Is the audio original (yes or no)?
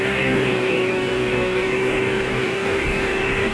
no